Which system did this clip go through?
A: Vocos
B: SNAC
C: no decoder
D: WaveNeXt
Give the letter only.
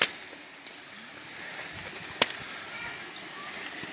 C